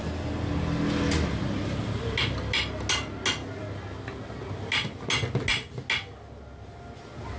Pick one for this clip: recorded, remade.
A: recorded